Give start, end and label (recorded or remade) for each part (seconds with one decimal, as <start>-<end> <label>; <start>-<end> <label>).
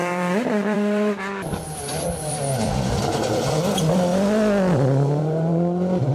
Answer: 0.0-2.9 remade; 2.9-6.1 recorded